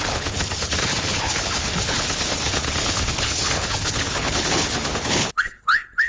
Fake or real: fake